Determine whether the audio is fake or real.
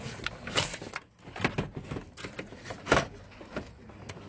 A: real